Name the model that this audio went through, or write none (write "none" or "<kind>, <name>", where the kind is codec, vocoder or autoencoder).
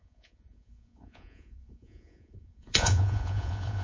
vocoder, Vocos